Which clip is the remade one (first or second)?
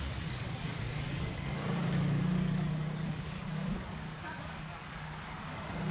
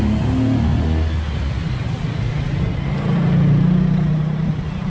first